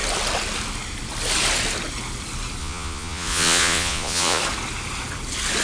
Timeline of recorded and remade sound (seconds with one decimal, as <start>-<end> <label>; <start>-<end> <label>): 0.0-2.6 recorded; 2.6-4.4 remade; 4.4-5.6 recorded